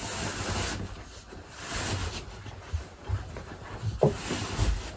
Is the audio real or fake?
real